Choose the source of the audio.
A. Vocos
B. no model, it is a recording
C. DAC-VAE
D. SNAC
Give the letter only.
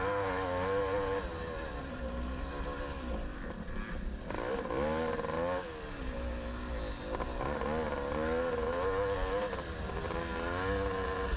B